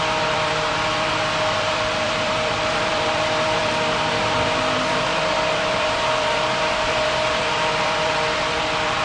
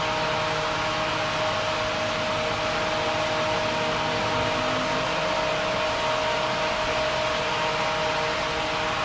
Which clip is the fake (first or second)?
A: first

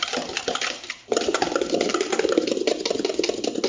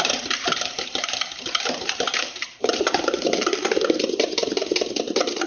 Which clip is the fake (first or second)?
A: second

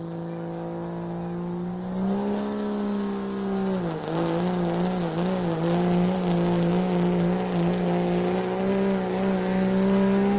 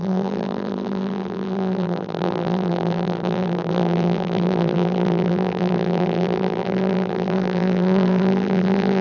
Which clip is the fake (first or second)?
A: second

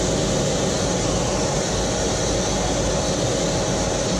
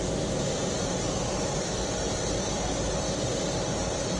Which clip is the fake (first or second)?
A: second